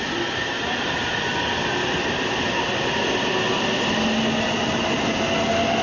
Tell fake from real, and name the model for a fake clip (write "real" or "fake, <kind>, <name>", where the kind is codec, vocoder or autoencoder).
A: real